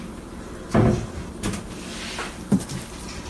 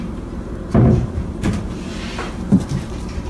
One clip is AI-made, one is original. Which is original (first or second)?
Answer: first